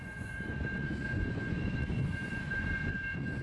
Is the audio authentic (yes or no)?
no